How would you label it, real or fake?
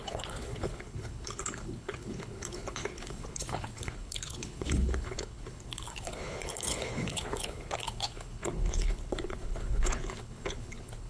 fake